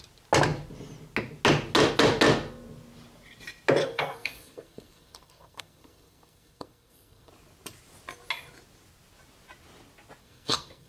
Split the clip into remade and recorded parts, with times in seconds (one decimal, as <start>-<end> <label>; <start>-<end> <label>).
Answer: 0.0-3.8 recorded; 3.8-7.3 remade; 7.3-10.2 recorded; 10.2-10.9 remade